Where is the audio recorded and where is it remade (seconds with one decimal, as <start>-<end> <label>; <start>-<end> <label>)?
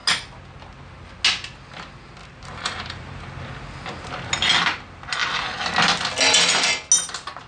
0.0-2.2 recorded; 2.2-3.2 remade; 3.2-7.5 recorded